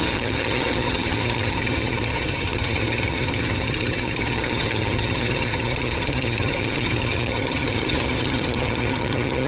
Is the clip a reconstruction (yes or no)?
yes